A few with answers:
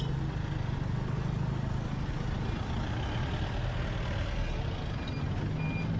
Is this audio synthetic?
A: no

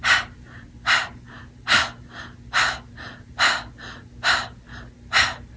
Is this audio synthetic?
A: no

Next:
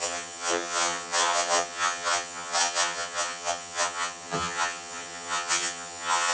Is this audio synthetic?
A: yes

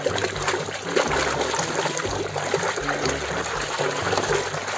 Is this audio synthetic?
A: no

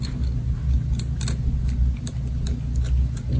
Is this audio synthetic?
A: no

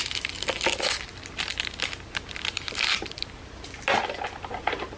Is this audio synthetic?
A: no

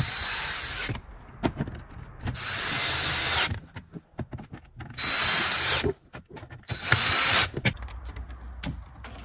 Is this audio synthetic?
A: no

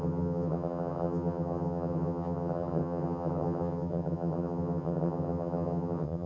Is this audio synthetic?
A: yes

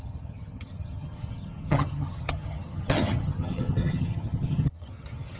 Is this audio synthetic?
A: yes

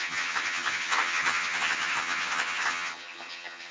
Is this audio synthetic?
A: yes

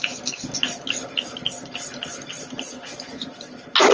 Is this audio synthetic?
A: no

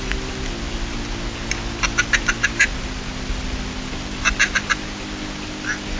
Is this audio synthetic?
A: no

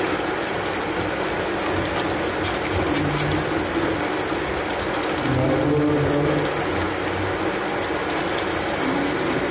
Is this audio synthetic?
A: no